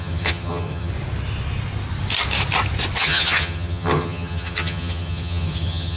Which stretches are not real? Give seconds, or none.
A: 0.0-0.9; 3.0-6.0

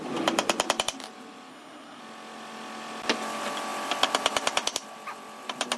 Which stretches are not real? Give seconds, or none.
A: 1.5-2.0

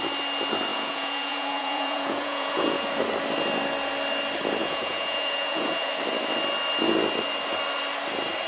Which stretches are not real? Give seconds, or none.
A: 0.7-2.9; 4.6-5.9

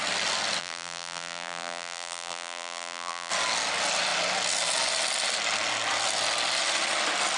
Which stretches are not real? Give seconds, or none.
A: 0.6-3.3

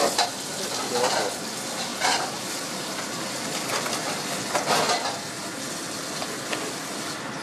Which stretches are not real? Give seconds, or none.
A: none

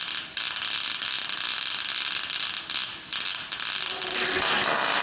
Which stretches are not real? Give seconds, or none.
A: none